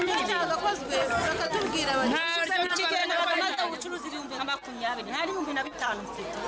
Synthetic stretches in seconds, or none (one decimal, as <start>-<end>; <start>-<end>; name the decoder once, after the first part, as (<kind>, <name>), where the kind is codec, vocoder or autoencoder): 3.0-4.4 (vocoder, BigVGAN v2)